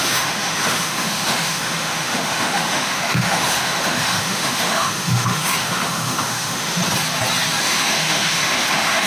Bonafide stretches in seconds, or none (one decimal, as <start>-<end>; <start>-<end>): 6.8-7.6